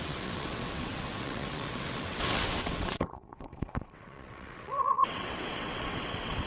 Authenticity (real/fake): fake